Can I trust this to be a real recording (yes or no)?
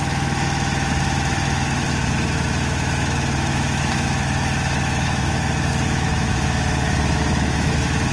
no